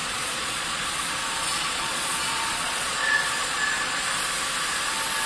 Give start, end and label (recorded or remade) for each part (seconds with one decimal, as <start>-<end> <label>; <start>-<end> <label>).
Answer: 0.0-1.1 remade; 1.1-1.5 recorded; 1.5-4.1 remade; 4.1-5.3 recorded